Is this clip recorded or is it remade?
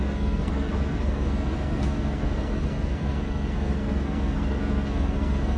remade